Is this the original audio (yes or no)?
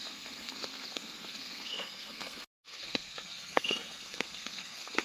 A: no